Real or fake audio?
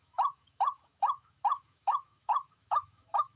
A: fake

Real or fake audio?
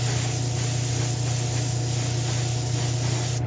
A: real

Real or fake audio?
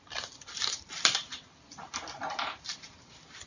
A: fake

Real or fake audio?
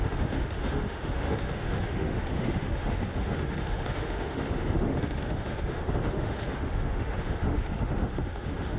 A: fake